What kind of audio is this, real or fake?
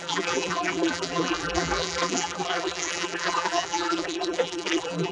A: fake